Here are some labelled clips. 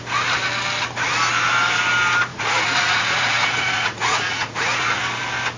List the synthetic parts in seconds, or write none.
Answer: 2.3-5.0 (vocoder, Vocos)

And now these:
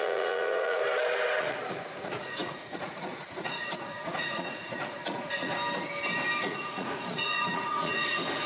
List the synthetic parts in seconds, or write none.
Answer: 0.0-0.8 (vocoder, Vocos); 1.4-5.5; 6.4-8.5

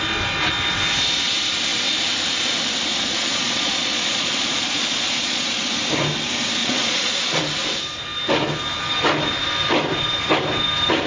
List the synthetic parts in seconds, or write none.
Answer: 2.9-5.6 (vocoder, Vocos); 6.6-7.4